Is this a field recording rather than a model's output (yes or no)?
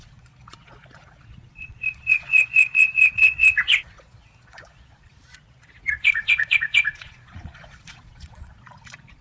no